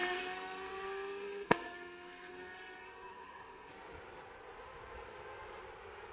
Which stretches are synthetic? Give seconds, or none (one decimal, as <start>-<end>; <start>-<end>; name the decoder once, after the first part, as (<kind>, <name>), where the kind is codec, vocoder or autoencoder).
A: 0.0-3.7 (codec, SNAC)